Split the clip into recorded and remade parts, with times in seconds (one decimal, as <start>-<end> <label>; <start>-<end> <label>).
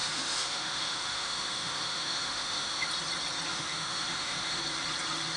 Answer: 0.0-2.9 remade; 2.9-3.5 recorded; 3.5-4.6 remade; 4.6-5.4 recorded